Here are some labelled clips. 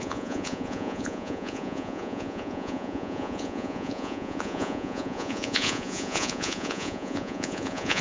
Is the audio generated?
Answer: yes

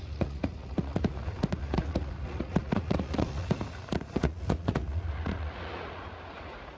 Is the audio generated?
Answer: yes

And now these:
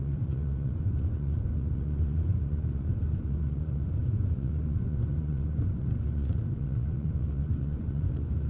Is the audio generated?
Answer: yes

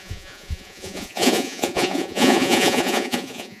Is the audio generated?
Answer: yes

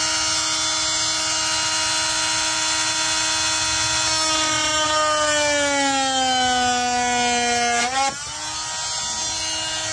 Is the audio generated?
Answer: no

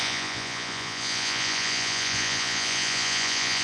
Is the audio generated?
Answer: yes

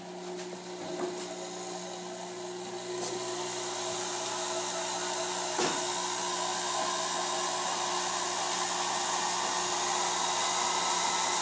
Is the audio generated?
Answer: no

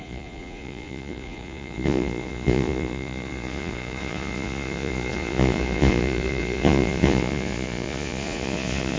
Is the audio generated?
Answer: yes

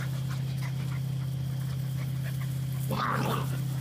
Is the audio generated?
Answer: no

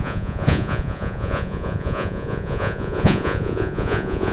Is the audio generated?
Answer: yes